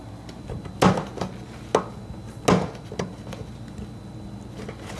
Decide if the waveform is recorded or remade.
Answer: recorded